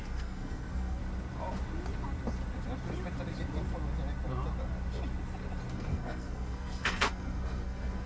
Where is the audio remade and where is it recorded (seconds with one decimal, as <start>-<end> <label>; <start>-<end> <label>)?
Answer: 0.0-1.0 remade; 1.0-5.7 recorded; 5.7-8.1 remade